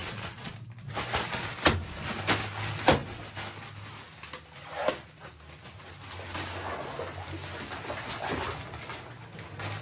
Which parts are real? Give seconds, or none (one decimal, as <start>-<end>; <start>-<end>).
0.5-9.8